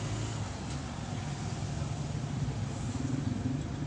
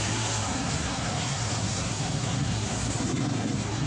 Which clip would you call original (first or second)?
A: first